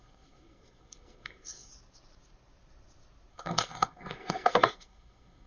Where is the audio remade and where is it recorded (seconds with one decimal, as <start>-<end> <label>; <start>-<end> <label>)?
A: 0.0-1.7 remade; 1.7-3.3 recorded; 3.3-5.5 remade